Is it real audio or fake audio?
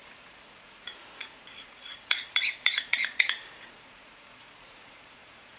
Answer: fake